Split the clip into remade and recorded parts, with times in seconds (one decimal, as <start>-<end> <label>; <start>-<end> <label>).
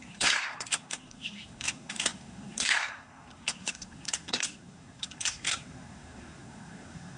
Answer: 0.0-7.2 remade